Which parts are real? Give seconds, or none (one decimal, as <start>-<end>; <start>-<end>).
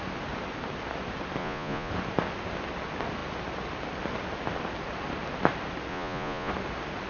0.0-1.4; 1.9-5.9; 6.5-7.1